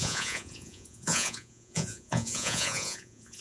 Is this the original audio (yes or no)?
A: no